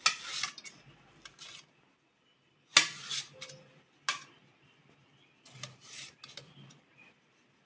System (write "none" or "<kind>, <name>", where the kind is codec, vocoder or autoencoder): none